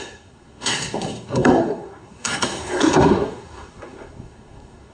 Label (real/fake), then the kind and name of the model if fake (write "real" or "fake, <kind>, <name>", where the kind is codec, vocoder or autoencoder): fake, codec, SNAC